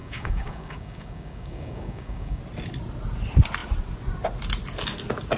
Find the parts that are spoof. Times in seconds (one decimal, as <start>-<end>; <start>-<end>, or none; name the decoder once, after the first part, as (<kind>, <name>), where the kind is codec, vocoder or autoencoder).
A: 0.0-2.4 (codec, DAC)